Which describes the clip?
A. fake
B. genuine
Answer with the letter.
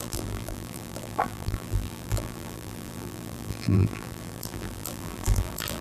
A